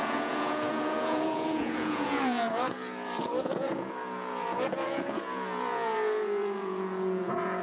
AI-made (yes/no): yes